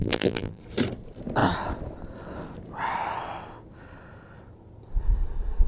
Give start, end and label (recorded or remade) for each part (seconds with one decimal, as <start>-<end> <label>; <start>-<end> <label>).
0.0-0.6 remade; 0.6-5.7 recorded